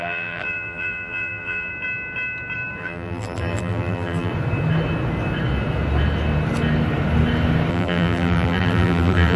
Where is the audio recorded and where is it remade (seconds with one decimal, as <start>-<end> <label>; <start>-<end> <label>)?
0.0-1.7 remade; 1.7-2.8 recorded; 2.8-4.3 remade; 4.3-7.7 recorded; 7.7-9.4 remade